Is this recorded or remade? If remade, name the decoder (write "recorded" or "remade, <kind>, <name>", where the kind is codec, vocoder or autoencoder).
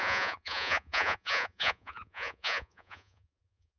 remade, vocoder, Vocos